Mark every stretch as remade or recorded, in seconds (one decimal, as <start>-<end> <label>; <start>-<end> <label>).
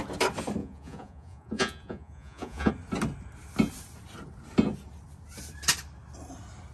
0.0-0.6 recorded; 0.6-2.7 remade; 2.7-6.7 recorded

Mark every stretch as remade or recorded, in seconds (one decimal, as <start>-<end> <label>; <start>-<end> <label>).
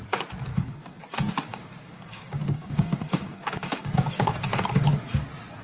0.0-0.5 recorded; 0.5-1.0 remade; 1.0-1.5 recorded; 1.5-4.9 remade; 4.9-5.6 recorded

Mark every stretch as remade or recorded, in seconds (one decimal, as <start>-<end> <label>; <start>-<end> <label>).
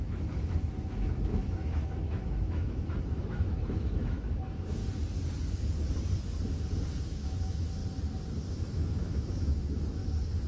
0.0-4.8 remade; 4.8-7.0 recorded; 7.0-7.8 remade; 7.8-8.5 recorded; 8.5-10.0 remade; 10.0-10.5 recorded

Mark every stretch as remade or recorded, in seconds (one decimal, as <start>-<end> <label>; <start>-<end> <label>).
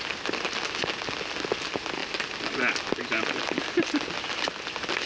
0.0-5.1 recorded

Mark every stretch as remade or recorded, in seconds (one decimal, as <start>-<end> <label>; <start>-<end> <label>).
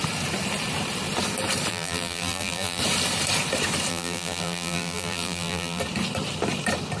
0.0-1.7 recorded; 1.7-2.8 remade; 2.8-3.9 recorded; 3.9-5.8 remade; 5.8-7.0 recorded